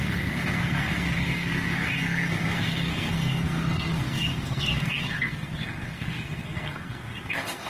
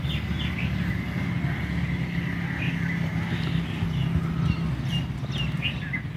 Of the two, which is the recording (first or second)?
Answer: second